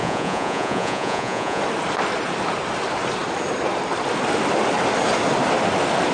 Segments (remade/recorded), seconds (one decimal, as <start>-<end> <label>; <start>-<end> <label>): 0.0-1.6 remade; 1.6-6.1 recorded